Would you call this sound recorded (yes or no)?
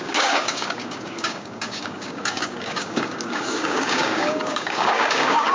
no